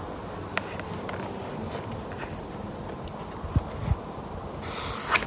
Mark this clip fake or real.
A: real